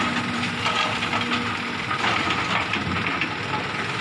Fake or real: real